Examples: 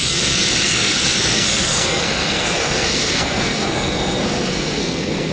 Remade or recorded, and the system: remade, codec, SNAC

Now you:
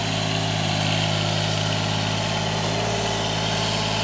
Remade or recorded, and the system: recorded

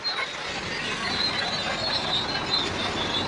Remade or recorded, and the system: recorded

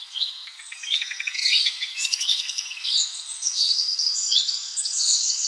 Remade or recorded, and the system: remade, codec, SNAC